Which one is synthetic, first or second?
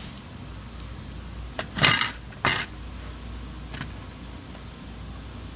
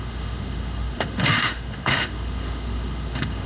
second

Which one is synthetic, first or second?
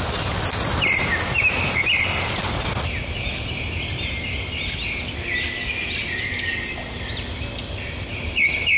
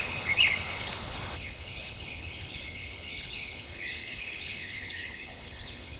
second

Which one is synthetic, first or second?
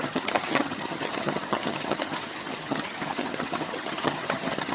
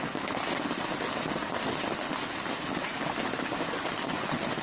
first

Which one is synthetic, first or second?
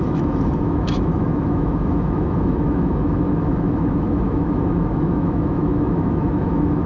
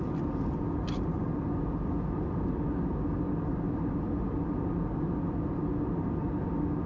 first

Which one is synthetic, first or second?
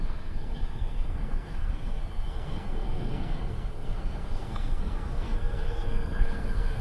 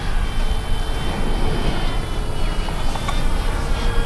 first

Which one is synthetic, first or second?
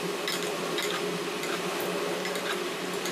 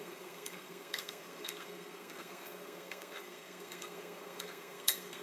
second